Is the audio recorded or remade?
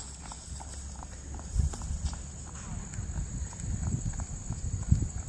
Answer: recorded